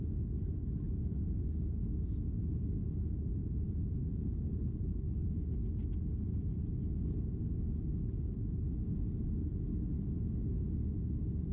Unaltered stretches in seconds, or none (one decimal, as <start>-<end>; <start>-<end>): 0.0-3.4; 5.3-8.1; 8.7-11.5